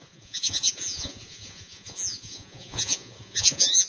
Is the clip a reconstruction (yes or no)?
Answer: yes